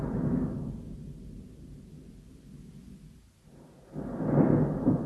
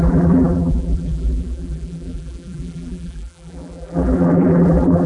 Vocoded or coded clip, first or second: second